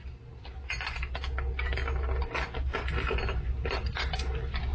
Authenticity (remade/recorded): recorded